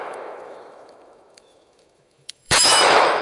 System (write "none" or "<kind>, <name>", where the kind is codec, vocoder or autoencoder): autoencoder, DAC-VAE